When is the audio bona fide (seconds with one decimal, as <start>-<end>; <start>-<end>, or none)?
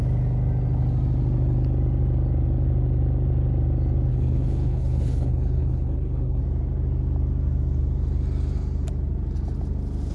0.0-4.1; 6.4-10.1